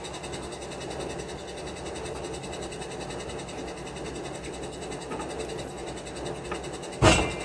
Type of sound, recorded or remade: recorded